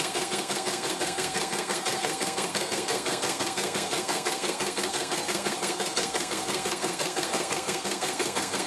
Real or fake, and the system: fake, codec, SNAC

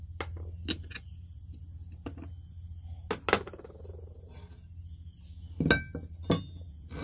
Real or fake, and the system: real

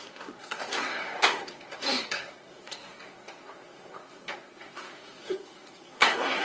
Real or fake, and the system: fake, codec, SNAC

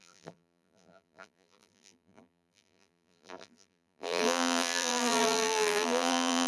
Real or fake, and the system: fake, vocoder, BigVGAN v2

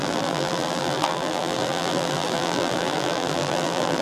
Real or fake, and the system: fake, vocoder, BigVGAN v2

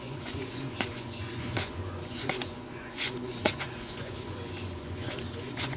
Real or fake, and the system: fake, vocoder, Vocos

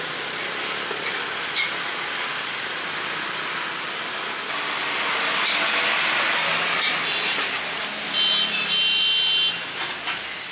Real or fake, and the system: real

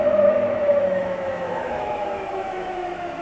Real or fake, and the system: fake, autoencoder, DAC-VAE